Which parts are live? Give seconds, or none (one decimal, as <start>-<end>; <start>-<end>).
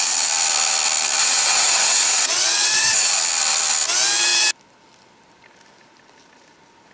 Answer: 0.0-1.2; 3.1-6.9